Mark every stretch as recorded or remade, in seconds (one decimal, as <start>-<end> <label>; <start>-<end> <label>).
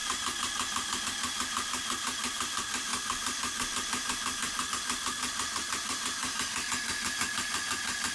0.0-6.2 recorded; 6.2-6.7 remade; 6.7-8.1 recorded